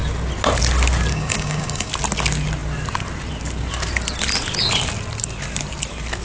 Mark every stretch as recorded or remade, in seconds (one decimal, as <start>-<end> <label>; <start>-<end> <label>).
0.0-1.1 recorded; 1.1-1.9 remade; 1.9-6.2 recorded